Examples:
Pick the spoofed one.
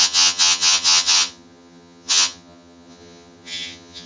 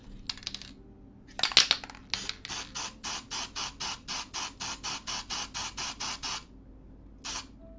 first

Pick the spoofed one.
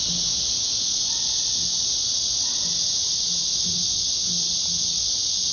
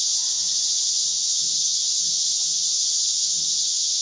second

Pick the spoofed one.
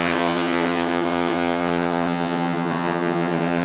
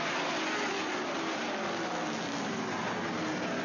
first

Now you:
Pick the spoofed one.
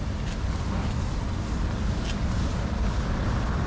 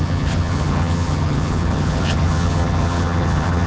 second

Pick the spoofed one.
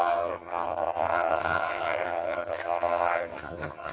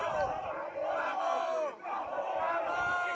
first